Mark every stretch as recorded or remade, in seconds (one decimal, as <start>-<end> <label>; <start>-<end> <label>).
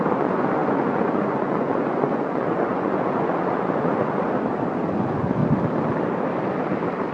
0.0-4.5 remade; 4.5-5.0 recorded; 5.0-5.4 remade; 5.4-7.1 recorded